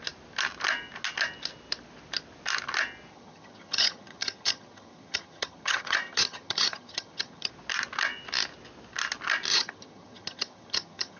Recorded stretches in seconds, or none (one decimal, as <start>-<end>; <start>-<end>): 0.0-3.1; 7.5-9.5